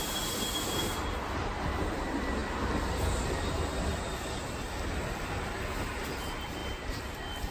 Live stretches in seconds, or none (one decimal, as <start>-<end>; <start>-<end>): 0.0-6.6

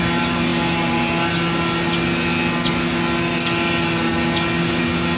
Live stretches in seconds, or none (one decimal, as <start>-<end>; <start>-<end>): 0.0-5.2

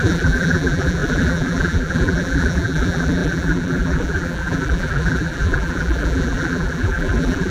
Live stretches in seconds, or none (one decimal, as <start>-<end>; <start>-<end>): none

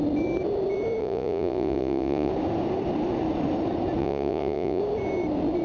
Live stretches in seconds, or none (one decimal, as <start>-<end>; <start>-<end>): 0.0-1.0; 2.3-4.0; 4.8-5.6

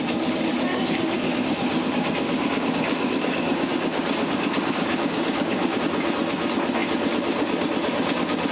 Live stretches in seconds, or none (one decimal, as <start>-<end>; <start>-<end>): 0.0-0.7; 5.8-8.5